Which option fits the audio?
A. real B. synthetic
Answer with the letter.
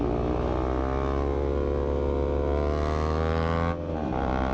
A